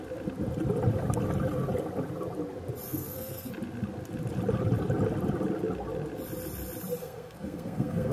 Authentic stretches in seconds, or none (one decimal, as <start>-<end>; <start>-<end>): 0.0-2.9; 3.5-7.0